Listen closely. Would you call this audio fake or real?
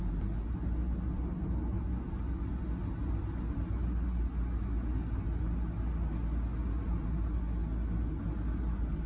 real